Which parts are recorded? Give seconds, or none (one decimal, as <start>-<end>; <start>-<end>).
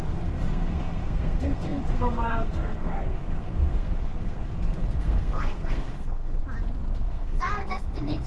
6.4-7.0